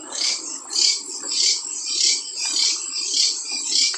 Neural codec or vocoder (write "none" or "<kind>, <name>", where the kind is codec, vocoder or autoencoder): none